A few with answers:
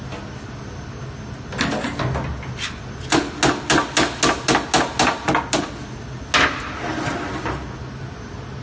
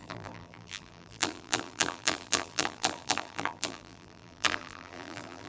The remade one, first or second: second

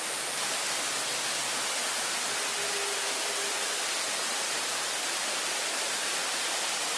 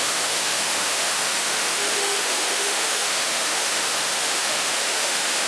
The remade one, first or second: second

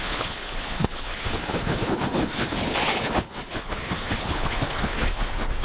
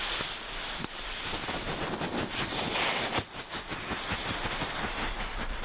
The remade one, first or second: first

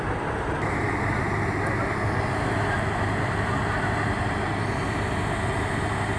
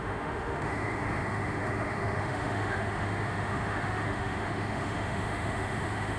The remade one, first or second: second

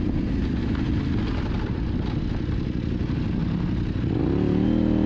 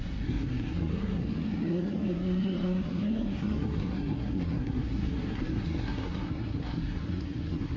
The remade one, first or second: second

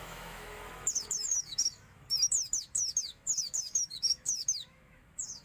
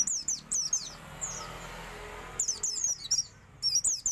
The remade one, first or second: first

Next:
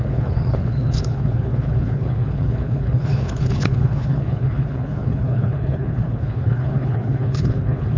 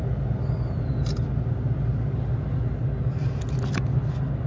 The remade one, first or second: first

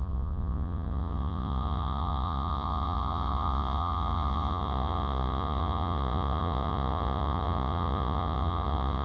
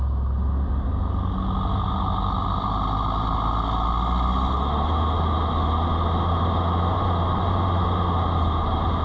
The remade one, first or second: first